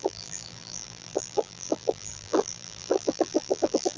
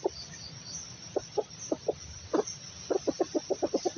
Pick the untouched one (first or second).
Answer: second